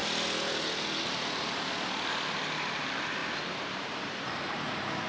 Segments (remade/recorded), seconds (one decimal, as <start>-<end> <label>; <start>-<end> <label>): 0.0-5.1 recorded